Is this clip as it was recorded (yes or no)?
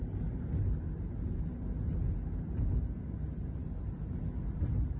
yes